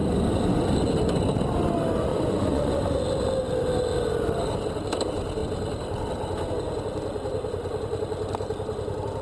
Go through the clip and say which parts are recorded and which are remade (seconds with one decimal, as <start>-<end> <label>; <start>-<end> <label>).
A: 0.0-2.1 recorded; 2.1-2.8 remade; 2.8-9.2 recorded